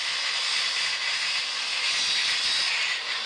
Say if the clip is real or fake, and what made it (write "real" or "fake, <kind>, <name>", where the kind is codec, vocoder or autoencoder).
real